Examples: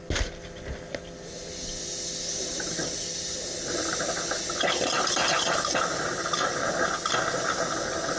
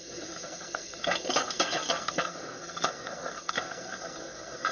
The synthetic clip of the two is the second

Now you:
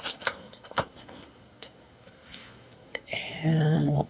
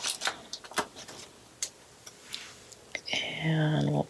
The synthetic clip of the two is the first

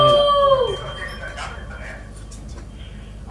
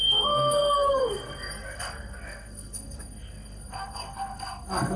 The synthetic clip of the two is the second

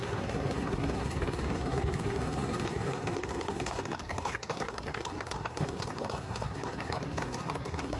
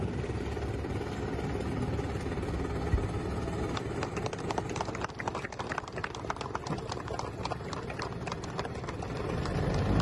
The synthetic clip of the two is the first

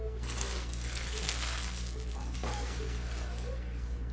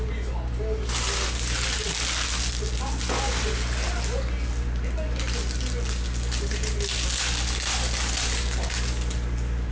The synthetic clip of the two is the first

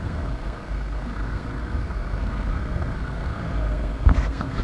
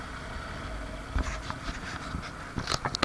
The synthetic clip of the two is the first